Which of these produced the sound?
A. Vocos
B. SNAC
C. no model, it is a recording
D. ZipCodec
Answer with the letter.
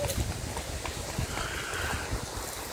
C